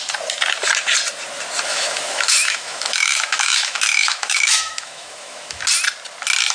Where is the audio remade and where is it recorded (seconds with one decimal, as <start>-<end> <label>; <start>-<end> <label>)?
0.0-1.7 recorded; 1.7-5.6 remade; 5.6-6.5 recorded